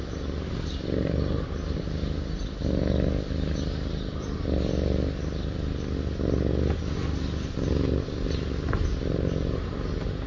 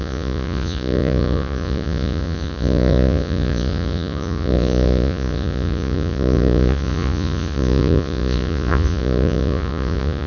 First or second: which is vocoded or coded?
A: second